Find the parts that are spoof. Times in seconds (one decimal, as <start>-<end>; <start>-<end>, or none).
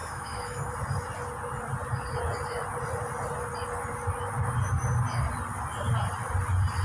0.0-0.7